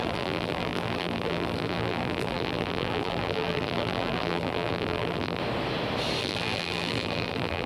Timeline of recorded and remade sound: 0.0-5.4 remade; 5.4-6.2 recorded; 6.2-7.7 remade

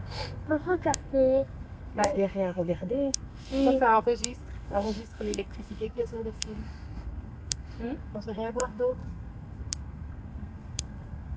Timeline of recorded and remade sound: 0.0-11.4 remade

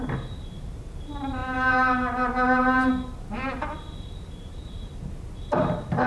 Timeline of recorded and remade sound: 0.0-6.1 remade